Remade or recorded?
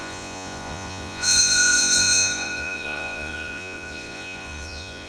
remade